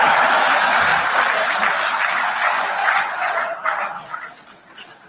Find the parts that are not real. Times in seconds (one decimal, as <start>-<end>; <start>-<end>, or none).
2.4-3.3